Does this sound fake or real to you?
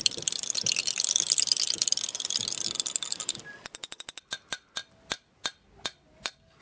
real